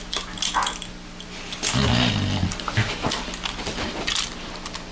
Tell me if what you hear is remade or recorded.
recorded